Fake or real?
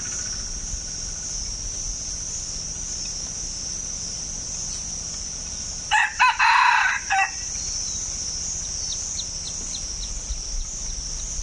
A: real